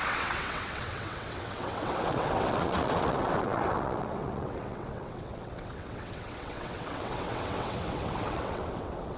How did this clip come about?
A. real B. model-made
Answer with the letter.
B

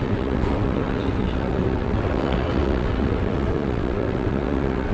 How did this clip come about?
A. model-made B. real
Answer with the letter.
A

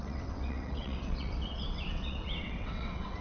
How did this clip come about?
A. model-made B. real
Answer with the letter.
A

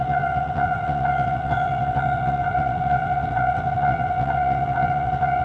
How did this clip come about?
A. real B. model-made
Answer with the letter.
B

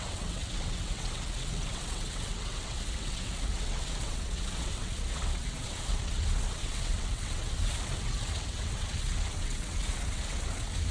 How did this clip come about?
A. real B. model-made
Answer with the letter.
B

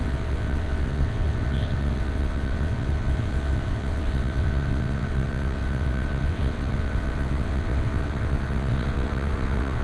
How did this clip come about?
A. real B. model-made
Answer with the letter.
B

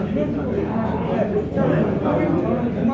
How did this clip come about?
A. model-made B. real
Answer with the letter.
B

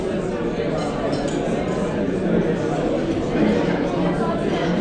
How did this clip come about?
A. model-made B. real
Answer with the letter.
B